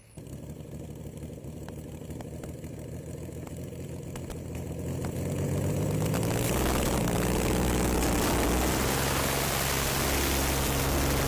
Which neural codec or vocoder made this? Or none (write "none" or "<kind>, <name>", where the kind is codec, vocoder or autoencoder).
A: none